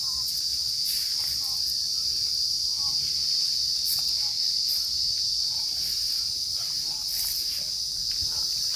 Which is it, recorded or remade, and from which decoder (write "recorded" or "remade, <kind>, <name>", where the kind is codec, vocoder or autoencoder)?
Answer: recorded